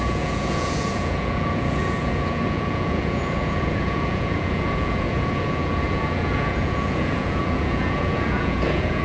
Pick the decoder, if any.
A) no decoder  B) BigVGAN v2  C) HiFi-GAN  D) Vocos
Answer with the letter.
D